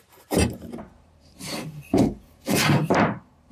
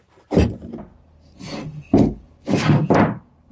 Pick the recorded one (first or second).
second